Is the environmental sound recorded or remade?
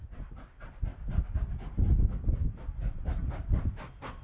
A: recorded